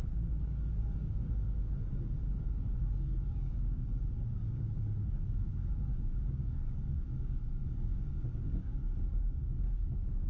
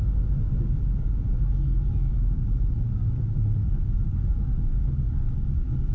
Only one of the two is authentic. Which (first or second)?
second